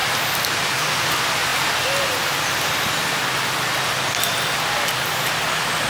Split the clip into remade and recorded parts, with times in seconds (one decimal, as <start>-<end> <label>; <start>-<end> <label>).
0.0-5.9 recorded